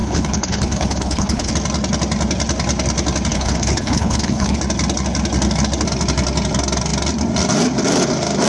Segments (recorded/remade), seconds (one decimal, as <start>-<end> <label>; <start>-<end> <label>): 0.0-1.5 remade; 1.5-3.3 recorded; 3.3-4.6 remade; 4.6-8.5 recorded